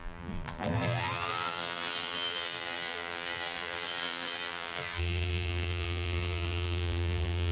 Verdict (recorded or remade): remade